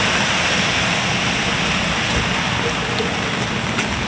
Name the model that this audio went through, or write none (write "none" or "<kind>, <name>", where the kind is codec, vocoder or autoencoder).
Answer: none